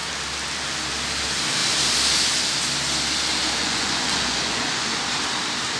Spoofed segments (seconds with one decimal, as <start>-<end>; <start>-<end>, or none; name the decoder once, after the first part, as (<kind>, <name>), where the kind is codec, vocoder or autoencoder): 3.6-5.0 (vocoder, Vocos)